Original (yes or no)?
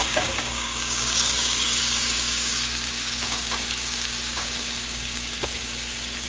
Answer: no